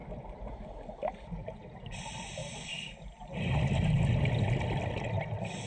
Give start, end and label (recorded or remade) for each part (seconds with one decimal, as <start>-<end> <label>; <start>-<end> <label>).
0.0-0.5 remade; 0.5-1.4 recorded; 1.4-1.9 remade; 1.9-2.4 recorded; 2.4-3.3 remade; 3.3-5.7 recorded